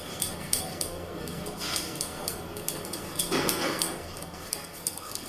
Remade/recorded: remade